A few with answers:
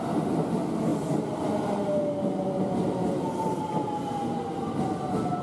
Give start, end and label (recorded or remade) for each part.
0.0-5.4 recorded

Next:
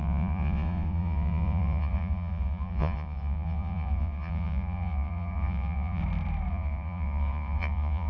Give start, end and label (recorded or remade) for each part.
0.0-6.0 remade; 6.0-6.5 recorded; 6.5-8.1 remade

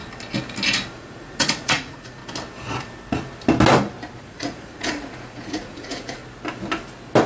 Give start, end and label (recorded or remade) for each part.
0.0-0.9 recorded; 0.9-2.2 remade; 2.2-4.2 recorded; 4.2-6.2 remade; 6.2-7.3 recorded

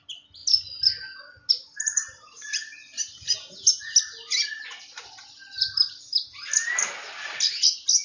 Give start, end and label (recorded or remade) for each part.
0.0-3.2 recorded; 3.2-3.8 remade; 3.8-8.0 recorded

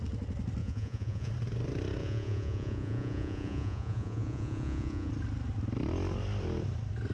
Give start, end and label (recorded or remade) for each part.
0.0-0.6 recorded; 0.6-1.3 remade; 1.3-2.0 recorded; 2.0-5.1 remade; 5.1-7.1 recorded

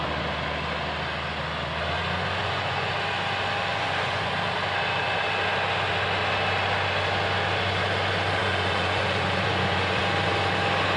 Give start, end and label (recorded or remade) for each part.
0.0-2.4 recorded; 2.4-2.9 remade; 2.9-3.7 recorded; 3.7-4.3 remade; 4.3-8.4 recorded; 8.4-10.0 remade; 10.0-11.0 recorded